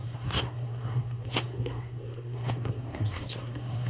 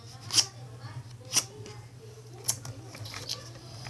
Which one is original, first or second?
second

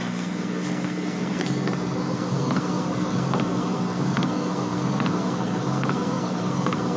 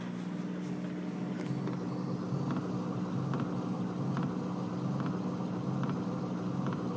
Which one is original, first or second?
second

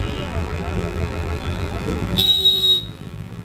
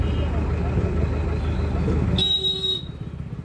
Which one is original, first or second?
second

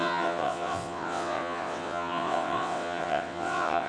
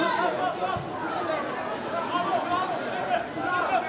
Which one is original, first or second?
second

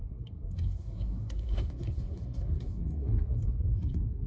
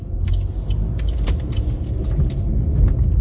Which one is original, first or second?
second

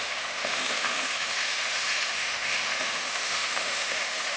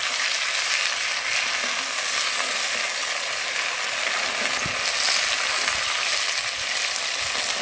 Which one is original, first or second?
second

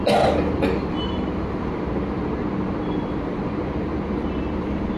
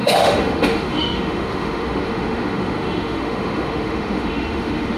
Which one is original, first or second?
first